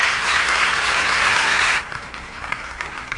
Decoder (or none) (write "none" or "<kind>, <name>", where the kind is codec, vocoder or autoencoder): codec, SNAC